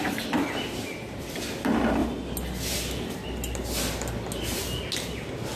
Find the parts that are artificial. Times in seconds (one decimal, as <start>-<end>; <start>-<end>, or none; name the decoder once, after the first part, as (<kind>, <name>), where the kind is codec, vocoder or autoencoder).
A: none